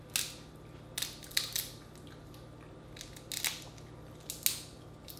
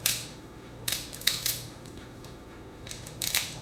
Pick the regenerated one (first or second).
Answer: second